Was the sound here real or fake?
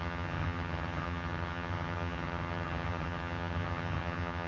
fake